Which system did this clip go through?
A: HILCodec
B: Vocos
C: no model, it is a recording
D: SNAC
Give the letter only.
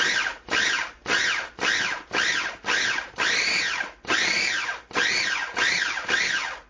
C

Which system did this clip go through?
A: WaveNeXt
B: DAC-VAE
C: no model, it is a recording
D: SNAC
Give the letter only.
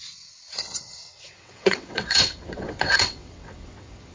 A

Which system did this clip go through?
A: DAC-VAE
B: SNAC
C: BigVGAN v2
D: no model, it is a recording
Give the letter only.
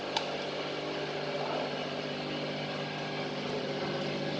D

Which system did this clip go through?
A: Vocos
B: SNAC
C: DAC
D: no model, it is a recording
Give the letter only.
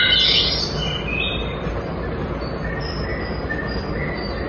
D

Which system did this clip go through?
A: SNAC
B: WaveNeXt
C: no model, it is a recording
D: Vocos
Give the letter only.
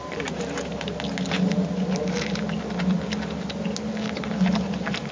C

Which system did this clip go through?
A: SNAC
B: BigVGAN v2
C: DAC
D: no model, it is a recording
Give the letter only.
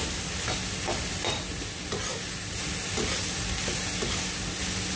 D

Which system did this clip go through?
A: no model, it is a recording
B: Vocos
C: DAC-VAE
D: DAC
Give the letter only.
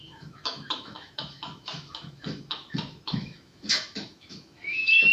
C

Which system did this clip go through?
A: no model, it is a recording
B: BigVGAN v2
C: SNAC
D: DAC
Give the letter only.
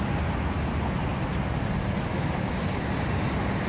A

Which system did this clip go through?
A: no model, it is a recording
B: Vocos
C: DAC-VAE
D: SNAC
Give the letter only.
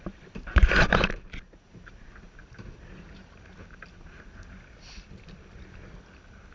A